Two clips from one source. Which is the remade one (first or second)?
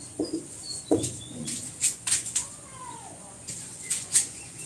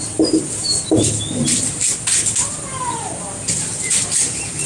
first